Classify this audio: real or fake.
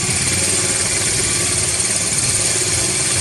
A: real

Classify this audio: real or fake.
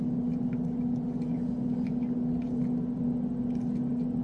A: real